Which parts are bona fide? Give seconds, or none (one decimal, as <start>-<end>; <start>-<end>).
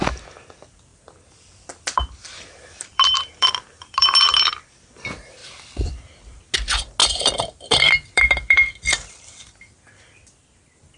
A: 0.0-0.9; 4.6-5.4; 5.9-7.0; 9.4-11.0